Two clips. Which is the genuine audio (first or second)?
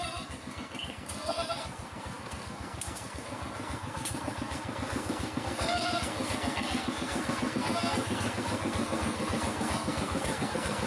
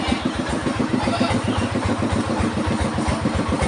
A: second